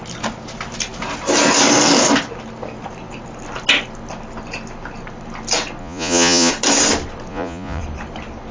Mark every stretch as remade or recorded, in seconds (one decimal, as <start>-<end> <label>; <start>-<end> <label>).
0.0-5.8 recorded; 5.8-6.5 remade; 6.5-7.3 recorded; 7.3-7.8 remade; 7.8-8.5 recorded